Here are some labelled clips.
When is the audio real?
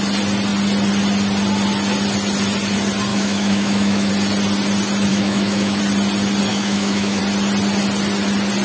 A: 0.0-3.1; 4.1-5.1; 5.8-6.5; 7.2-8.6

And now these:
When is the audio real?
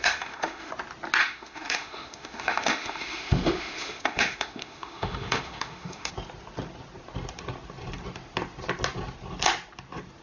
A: 0.7-1.2; 6.1-10.2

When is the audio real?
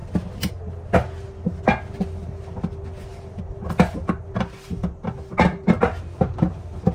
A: 0.0-6.9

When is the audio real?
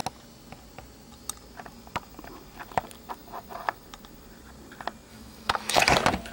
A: 0.0-5.1; 5.8-6.3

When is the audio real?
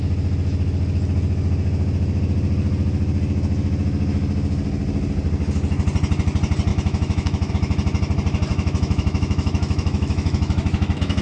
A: 0.0-6.7; 7.5-8.5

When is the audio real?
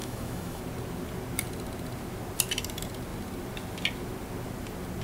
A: 0.6-5.0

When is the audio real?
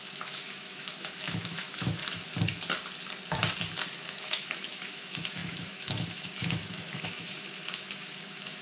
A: 2.0-3.9